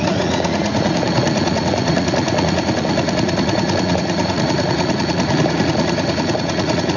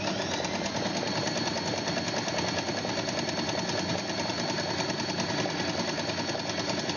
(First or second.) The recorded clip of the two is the second